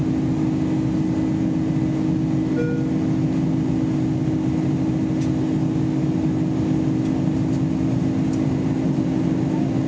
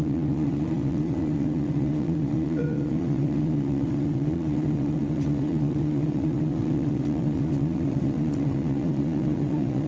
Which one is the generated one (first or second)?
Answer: second